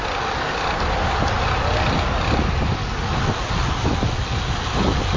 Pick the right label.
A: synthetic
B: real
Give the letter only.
B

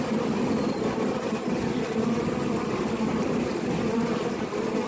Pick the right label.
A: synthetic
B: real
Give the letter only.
B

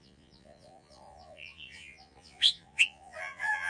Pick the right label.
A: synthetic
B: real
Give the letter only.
A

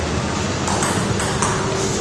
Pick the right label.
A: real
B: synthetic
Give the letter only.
A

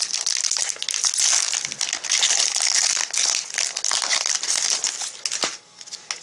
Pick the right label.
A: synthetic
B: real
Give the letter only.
B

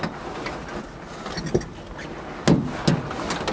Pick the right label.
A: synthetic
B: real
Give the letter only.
B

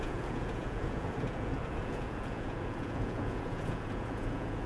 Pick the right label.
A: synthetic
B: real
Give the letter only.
A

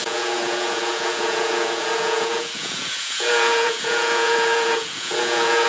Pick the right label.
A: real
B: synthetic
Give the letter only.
B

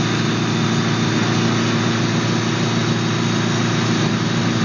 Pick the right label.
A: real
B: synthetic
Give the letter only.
A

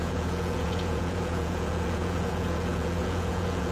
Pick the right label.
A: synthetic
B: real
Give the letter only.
A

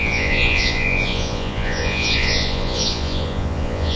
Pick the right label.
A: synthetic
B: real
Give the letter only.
A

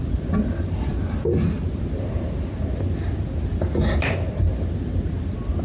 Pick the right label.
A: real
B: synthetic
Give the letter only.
A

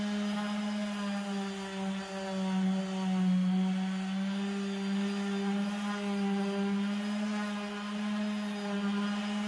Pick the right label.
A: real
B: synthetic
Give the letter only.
A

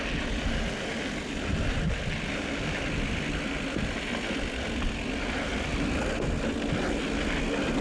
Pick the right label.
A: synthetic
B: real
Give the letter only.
B